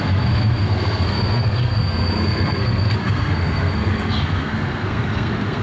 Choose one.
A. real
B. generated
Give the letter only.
B